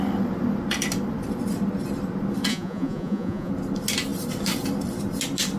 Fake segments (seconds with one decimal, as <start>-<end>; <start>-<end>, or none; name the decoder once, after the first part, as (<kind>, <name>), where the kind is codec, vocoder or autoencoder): 2.5-3.5 (vocoder, Vocos)